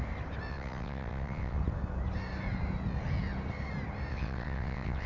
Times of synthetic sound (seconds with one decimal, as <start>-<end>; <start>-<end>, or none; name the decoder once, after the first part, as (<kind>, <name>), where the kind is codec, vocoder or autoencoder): 0.5-1.6 (vocoder, WaveNeXt); 4.1-5.1